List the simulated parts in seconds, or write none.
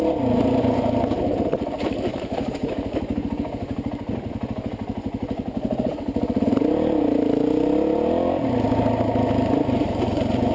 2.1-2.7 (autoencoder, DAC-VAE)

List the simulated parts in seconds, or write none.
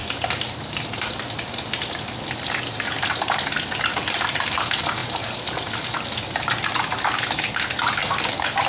none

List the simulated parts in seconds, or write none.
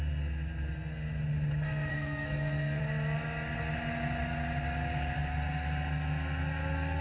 1.9-2.8 (codec, SNAC)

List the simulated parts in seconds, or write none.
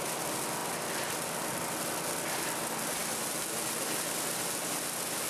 none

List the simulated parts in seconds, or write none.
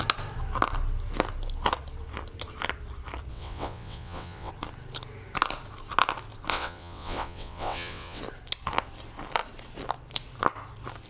3.3-4.5 (vocoder, WaveNeXt); 6.5-8.2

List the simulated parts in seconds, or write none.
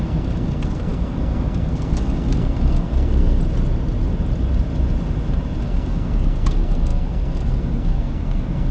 0.0-3.4 (codec, SNAC); 5.6-8.7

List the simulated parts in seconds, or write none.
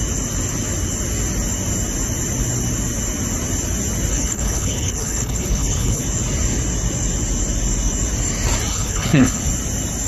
4.1-6.0 (codec, HILCodec); 8.7-9.4